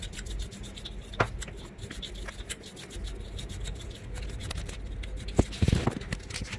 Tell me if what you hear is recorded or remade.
recorded